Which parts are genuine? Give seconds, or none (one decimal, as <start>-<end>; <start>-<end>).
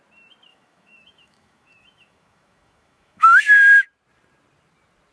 0.0-0.5; 3.4-5.1